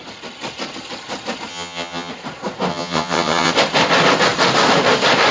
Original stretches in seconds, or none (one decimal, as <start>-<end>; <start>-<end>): 0.0-1.5; 2.1-2.7; 3.5-5.3